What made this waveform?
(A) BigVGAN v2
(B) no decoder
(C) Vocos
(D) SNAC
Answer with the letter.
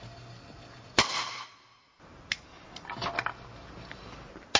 B